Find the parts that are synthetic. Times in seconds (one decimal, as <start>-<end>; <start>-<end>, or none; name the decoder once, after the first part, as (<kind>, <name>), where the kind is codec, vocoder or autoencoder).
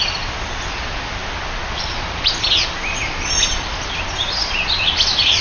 none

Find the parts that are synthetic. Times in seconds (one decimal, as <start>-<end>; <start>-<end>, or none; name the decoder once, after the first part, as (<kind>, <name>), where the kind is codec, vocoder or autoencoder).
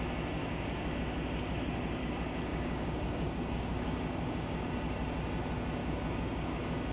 0.4-1.0 (codec, DAC); 2.0-4.7; 5.8-6.9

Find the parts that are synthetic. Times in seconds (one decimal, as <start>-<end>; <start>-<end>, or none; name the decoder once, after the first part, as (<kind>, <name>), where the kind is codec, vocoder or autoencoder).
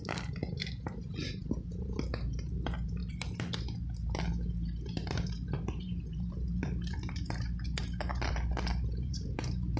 0.0-3.0 (vocoder, BigVGAN v2); 4.2-9.8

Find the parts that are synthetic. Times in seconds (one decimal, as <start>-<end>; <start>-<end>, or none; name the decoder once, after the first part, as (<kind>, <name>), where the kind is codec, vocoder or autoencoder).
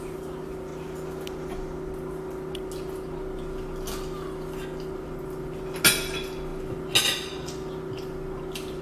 none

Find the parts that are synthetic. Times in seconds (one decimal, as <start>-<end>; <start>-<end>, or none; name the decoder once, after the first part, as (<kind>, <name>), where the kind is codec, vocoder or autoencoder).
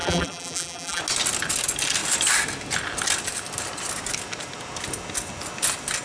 0.0-1.0 (vocoder, BigVGAN v2)